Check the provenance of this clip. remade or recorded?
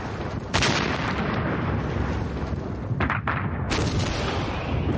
recorded